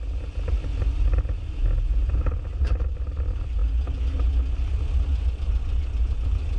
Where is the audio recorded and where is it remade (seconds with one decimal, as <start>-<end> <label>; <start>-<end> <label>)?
0.0-6.6 recorded